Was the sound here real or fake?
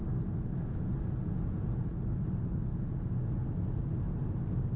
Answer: real